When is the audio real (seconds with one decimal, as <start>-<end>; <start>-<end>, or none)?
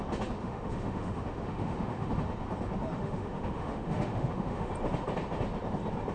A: 0.0-0.4; 2.1-3.0; 4.7-6.1